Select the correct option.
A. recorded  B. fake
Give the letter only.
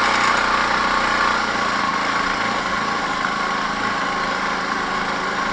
A